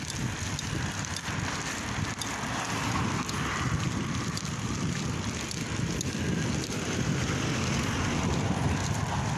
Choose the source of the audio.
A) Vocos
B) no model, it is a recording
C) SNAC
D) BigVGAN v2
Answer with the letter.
B